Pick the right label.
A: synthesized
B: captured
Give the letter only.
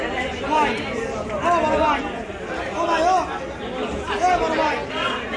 B